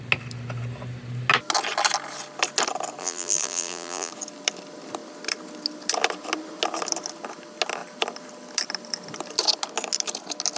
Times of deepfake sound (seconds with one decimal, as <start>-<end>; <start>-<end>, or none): 3.0-4.1